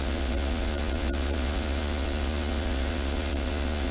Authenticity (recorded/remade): remade